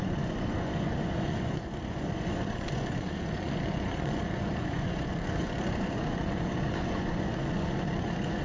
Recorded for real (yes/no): no